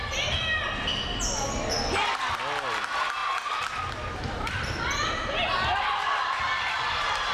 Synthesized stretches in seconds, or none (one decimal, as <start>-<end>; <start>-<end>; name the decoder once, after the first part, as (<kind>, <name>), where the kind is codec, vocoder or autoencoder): none